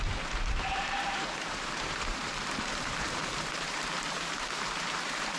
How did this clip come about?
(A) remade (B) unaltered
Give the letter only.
A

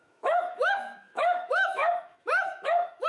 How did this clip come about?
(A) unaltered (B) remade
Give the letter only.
B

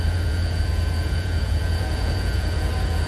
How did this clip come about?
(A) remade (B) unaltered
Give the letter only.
A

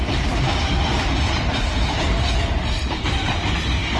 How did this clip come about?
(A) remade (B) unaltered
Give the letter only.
A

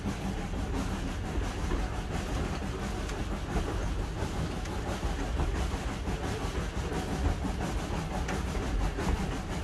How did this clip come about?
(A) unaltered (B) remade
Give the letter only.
A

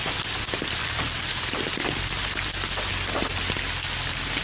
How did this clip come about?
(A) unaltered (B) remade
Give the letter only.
A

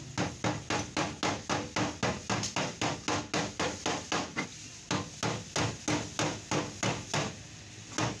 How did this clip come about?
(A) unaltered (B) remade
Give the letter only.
A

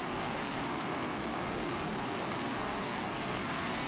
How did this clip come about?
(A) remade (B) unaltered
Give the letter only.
A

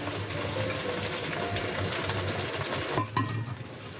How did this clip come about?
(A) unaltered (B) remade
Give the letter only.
A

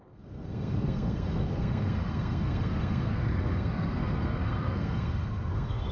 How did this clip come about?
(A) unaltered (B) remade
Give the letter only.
B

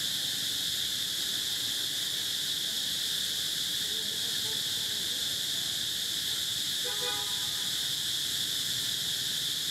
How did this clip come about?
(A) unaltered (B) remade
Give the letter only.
A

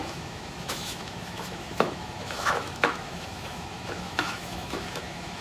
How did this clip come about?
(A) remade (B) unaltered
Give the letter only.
A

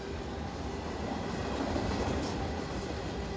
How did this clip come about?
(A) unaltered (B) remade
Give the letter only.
A